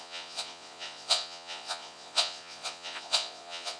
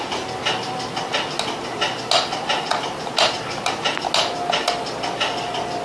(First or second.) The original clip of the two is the second